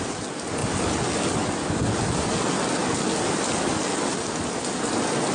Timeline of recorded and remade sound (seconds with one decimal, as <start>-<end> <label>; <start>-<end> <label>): 0.0-5.3 recorded